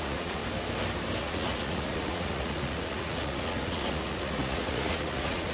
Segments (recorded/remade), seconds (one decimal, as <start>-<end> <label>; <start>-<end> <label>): 0.0-0.4 remade; 0.4-1.2 recorded; 1.2-5.5 remade